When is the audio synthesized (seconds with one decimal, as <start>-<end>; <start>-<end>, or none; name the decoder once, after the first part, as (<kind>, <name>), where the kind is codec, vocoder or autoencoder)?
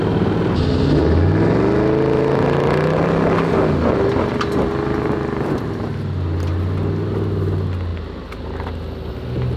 none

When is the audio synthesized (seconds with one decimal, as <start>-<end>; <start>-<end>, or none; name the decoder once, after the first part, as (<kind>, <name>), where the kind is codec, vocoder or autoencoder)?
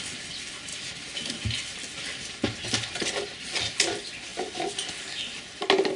4.3-5.4 (vocoder, BigVGAN v2)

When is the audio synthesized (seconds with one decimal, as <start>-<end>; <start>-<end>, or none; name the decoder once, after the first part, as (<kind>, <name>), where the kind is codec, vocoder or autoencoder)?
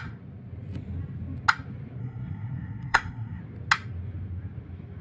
2.0-3.4 (codec, SNAC)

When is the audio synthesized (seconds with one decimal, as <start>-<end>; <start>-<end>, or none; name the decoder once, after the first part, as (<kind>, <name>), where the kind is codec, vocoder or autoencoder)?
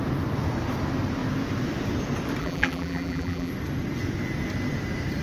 2.4-3.5 (vocoder, BigVGAN v2)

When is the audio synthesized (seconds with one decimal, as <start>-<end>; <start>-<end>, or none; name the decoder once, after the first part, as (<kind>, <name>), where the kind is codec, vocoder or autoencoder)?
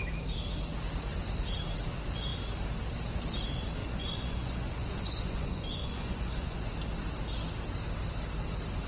3.8-6.6 (vocoder, Vocos)